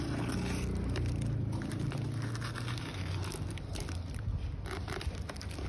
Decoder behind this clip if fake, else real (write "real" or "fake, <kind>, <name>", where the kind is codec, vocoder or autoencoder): real